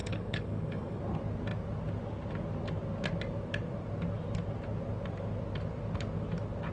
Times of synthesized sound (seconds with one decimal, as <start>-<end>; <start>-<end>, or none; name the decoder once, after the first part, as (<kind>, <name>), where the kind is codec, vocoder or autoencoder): 0.0-1.0 (codec, DAC)